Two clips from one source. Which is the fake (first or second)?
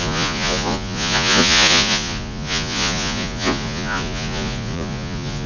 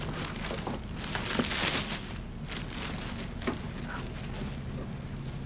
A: first